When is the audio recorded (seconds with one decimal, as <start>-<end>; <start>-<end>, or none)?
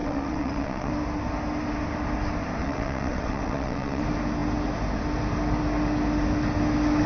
0.9-2.6; 4.0-7.1